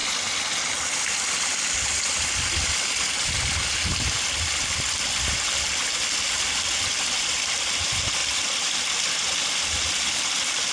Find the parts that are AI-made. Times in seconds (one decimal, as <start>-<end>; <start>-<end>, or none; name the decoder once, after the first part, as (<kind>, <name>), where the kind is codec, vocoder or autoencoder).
none